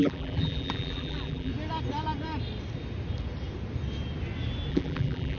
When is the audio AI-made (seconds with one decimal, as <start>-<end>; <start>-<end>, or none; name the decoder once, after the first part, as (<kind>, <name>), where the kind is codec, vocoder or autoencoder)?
0.0-1.5 (vocoder, BigVGAN v2); 4.7-5.4